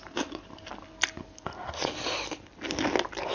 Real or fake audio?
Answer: real